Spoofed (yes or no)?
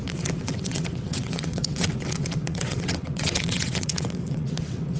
yes